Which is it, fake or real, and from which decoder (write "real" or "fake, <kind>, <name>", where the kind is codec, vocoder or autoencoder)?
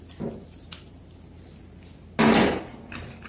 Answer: real